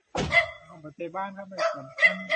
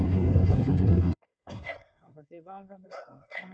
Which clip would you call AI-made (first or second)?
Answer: second